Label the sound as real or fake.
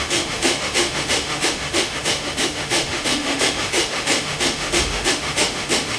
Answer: fake